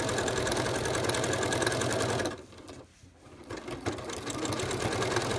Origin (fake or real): real